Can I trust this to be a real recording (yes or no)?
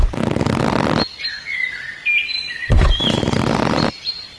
yes